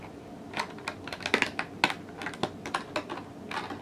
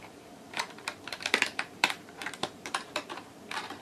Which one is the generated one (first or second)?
second